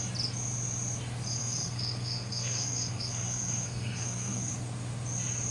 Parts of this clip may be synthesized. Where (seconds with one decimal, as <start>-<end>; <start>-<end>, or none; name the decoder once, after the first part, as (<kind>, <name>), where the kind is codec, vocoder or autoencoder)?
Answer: 1.4-4.5 (codec, SNAC)